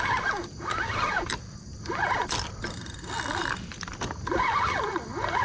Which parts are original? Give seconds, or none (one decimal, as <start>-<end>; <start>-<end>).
0.0-5.4